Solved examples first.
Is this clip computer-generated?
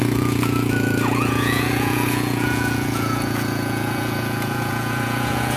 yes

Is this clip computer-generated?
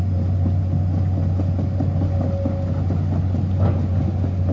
no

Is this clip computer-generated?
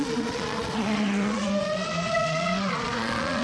yes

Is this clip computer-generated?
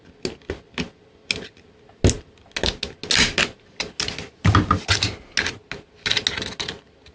no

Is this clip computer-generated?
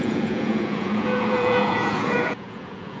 yes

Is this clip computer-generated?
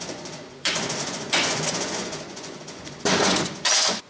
yes